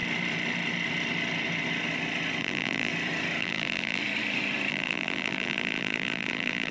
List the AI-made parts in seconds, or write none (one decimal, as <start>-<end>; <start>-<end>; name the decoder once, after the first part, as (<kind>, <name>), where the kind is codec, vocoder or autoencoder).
2.4-2.9 (vocoder, BigVGAN v2); 3.4-4.0; 4.7-6.7